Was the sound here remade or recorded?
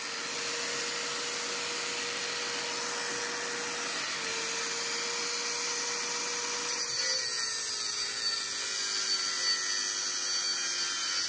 recorded